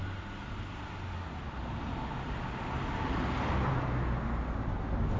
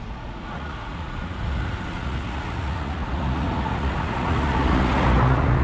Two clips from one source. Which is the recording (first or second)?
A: first